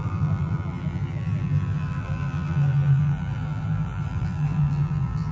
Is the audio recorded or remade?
remade